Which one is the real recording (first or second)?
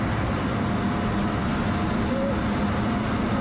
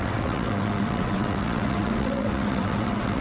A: first